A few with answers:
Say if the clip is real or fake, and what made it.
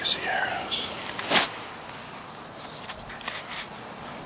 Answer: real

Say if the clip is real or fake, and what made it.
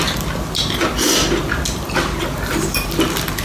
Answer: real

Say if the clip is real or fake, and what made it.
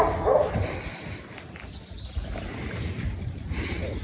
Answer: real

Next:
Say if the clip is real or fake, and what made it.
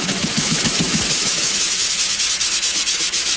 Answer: fake, autoencoder, DAC-VAE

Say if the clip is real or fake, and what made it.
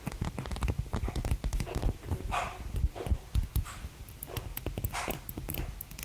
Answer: real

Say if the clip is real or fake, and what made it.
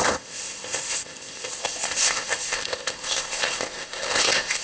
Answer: fake, codec, ZipCodec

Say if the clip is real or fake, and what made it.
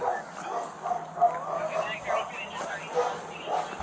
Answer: real